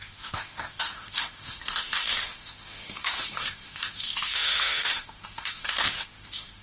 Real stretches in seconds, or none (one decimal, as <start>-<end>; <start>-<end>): none